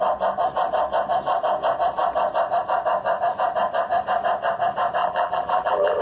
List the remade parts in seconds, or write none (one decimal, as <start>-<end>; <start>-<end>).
5.0-6.0